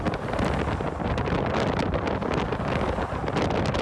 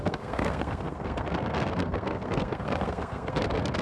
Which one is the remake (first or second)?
second